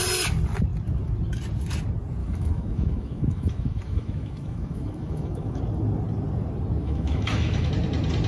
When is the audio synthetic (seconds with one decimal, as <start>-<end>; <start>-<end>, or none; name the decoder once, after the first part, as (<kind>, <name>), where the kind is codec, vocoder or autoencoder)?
2.2-5.6 (autoencoder, DAC-VAE); 6.8-7.7